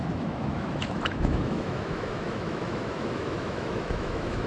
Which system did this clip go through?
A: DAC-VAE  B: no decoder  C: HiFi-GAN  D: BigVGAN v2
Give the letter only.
A